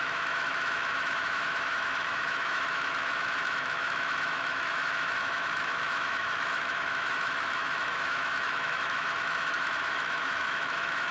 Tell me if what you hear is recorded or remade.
remade